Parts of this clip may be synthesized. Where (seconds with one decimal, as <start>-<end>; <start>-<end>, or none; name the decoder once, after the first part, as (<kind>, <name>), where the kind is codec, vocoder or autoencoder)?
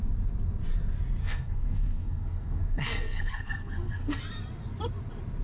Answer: 1.2-4.2 (codec, SNAC)